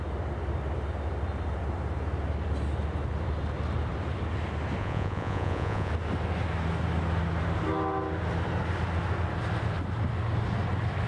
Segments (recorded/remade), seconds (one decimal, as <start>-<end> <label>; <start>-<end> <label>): 0.0-4.8 recorded; 4.8-5.9 remade; 5.9-11.1 recorded